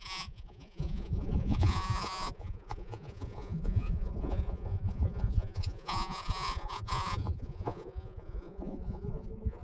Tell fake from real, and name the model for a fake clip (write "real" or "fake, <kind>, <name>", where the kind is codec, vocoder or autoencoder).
fake, vocoder, Vocos